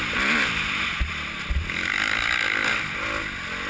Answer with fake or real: real